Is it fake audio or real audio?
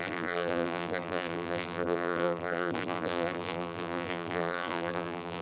fake